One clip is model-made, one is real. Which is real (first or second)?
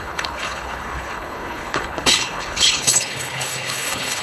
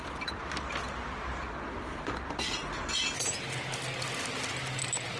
second